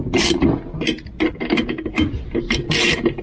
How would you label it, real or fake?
real